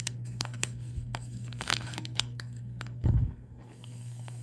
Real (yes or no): no